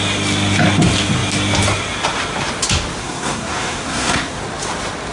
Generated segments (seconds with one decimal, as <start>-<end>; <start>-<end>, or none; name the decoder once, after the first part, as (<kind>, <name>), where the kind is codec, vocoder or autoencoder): 3.0-4.4 (codec, SNAC)